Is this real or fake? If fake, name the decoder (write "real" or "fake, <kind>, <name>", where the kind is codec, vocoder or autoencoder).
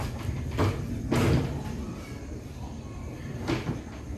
real